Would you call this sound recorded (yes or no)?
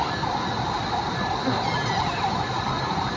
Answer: yes